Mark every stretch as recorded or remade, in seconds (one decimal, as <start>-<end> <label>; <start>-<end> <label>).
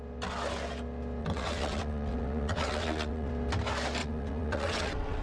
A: 0.0-1.2 recorded; 1.2-3.3 remade; 3.3-4.0 recorded; 4.0-5.2 remade